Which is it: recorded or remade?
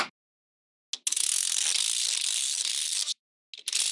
recorded